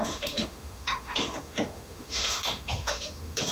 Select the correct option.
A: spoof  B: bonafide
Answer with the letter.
A